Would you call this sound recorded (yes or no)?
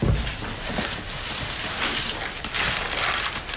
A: yes